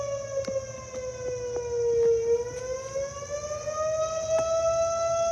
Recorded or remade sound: recorded